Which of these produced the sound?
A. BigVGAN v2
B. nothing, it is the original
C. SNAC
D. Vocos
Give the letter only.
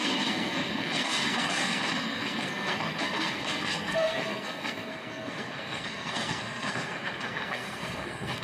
C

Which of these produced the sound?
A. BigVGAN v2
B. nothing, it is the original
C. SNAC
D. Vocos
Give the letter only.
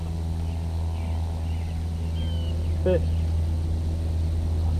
B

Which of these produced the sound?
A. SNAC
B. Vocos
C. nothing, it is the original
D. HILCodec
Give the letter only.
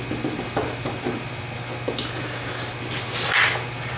C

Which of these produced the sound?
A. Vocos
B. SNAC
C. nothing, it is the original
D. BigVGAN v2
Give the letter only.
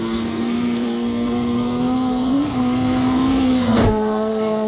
B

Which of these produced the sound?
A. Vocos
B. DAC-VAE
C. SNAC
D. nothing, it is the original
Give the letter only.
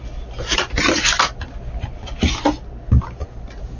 D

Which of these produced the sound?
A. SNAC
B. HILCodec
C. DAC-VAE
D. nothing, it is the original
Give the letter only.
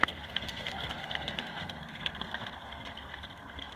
A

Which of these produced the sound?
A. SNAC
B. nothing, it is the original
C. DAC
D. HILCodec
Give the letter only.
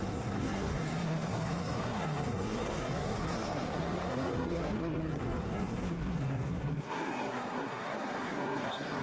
A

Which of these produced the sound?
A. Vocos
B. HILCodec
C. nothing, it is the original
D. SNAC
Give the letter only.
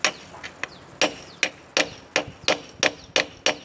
C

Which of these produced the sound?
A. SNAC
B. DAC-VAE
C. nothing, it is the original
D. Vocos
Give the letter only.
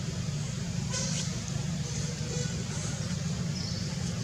C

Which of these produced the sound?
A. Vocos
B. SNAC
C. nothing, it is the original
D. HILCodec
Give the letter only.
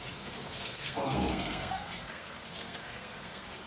B